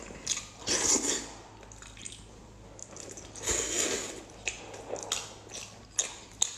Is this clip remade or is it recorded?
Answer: recorded